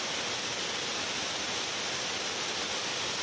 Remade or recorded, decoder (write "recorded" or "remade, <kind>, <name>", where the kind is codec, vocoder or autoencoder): recorded